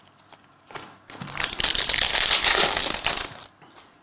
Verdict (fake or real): real